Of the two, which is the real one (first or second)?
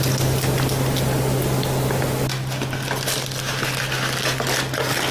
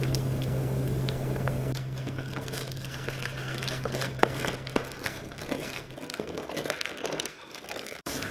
first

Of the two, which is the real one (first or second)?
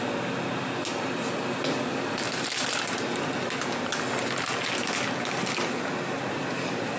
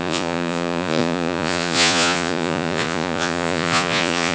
first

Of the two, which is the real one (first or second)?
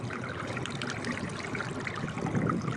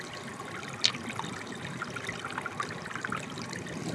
first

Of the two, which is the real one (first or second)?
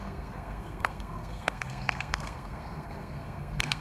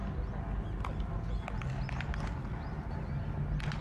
second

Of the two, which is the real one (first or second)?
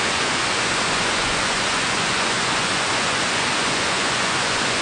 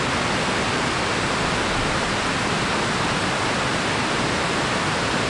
second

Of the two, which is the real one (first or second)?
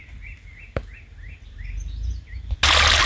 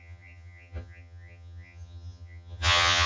first